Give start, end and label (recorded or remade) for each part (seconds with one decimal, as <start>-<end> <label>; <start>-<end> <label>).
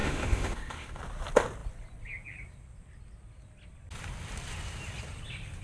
0.0-1.0 remade; 1.0-5.6 recorded